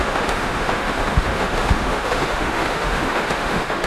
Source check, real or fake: fake